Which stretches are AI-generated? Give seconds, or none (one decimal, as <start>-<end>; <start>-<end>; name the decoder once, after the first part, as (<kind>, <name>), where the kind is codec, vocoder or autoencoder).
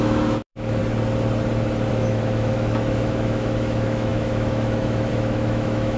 0.0-0.8 (autoencoder, DAC-VAE); 1.9-6.0